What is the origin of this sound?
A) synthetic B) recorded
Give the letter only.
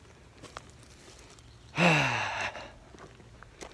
B